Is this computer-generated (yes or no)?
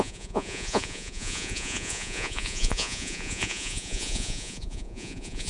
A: yes